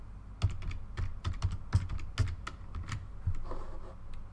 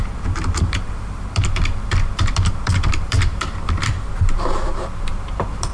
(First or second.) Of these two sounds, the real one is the first